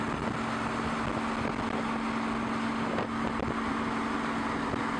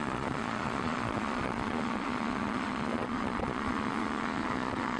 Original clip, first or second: first